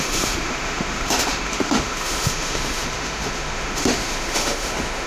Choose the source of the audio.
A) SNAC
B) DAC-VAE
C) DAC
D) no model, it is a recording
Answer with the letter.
B